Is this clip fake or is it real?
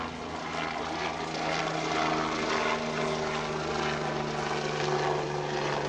real